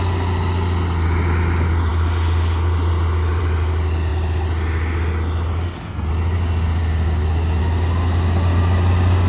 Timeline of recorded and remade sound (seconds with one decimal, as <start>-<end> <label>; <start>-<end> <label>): 0.0-9.3 recorded